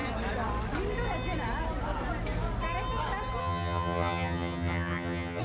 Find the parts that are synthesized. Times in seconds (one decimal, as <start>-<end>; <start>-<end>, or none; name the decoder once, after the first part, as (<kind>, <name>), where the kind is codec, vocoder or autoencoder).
3.4-5.4 (vocoder, HiFi-GAN)